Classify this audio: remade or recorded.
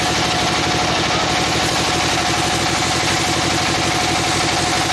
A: recorded